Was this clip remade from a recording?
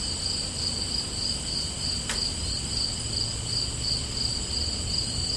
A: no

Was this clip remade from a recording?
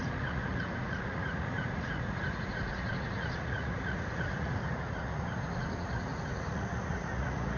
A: yes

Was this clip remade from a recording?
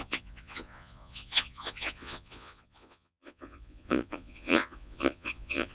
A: yes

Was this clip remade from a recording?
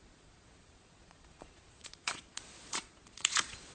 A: yes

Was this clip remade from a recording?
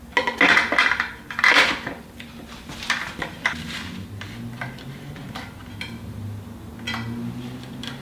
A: no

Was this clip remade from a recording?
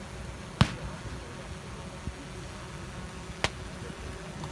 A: no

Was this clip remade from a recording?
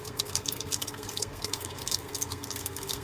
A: yes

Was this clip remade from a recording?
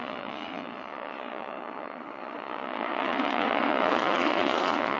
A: yes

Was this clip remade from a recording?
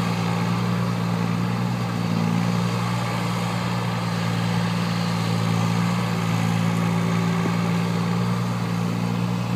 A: no